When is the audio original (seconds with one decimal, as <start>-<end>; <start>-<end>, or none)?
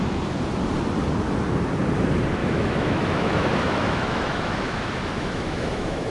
0.0-2.4